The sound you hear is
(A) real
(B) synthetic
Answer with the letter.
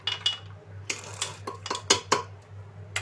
A